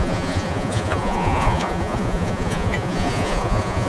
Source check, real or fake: fake